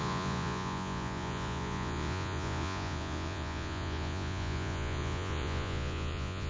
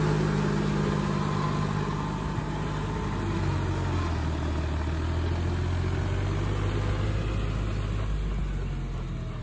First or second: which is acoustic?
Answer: second